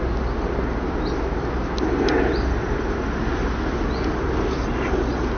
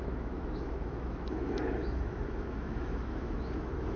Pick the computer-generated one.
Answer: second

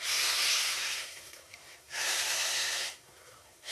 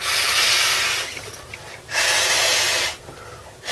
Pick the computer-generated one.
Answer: first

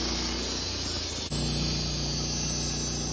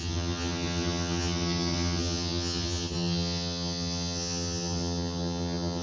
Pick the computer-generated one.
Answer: second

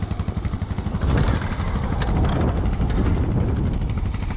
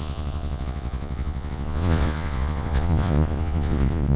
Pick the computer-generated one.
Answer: second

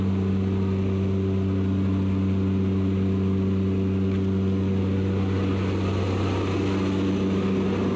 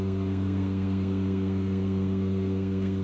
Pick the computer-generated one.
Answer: second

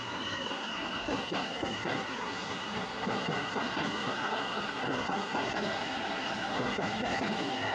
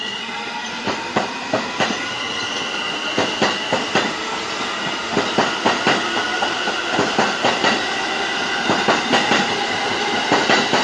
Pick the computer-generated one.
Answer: first